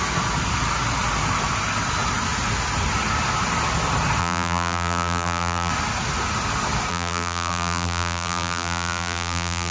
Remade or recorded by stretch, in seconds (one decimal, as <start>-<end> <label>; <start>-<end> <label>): 0.0-4.2 recorded; 4.2-5.7 remade; 5.7-6.9 recorded; 6.9-9.7 remade